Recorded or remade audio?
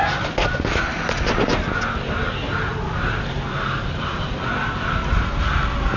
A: recorded